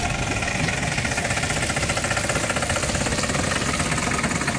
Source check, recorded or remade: recorded